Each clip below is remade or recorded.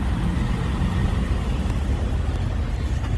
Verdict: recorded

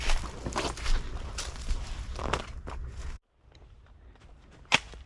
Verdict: recorded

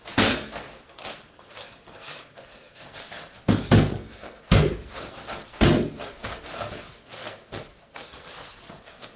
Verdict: remade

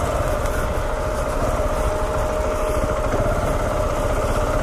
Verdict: recorded